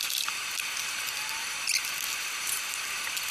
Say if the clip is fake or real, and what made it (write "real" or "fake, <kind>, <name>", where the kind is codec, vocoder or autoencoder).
real